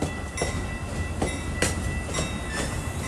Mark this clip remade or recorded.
recorded